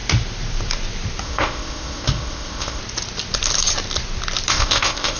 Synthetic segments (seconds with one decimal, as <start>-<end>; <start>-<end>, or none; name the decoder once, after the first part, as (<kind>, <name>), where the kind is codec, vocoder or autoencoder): 1.2-2.8 (codec, ZipCodec); 4.5-5.2